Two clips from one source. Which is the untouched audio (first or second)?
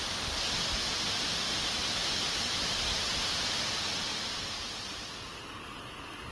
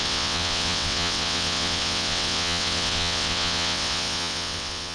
first